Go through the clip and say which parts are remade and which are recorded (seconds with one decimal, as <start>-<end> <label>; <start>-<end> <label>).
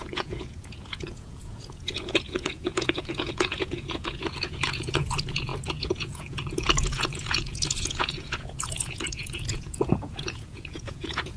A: 0.0-11.4 remade